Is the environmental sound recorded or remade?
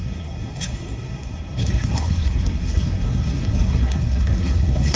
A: remade